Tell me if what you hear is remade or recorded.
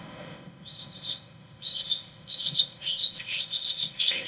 remade